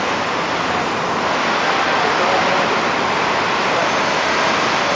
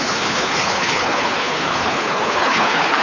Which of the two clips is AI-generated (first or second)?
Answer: second